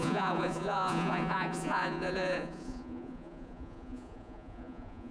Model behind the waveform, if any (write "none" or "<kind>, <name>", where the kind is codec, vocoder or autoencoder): vocoder, Vocos